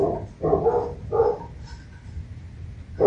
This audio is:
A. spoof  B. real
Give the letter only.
B